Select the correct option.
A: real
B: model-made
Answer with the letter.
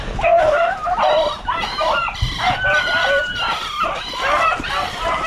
A